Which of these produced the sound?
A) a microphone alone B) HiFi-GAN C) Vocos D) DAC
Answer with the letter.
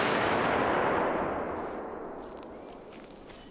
A